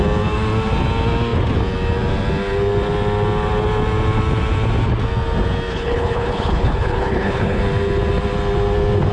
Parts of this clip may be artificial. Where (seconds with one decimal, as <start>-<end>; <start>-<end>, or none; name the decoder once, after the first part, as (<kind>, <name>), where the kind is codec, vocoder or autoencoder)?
5.7-7.6 (codec, HILCodec)